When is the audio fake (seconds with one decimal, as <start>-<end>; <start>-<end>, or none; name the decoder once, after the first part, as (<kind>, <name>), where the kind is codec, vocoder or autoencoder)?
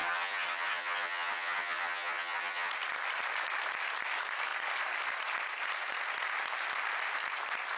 0.0-2.7 (vocoder, HiFi-GAN)